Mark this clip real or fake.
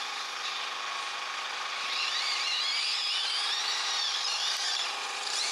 fake